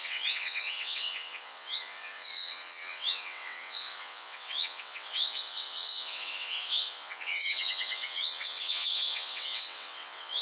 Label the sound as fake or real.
fake